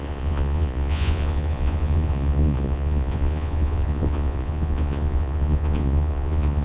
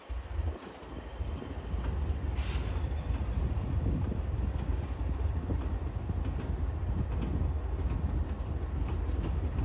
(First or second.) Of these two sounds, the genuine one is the second